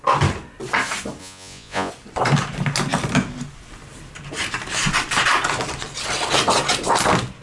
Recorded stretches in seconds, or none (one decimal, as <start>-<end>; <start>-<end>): 0.0-1.2; 1.9-7.4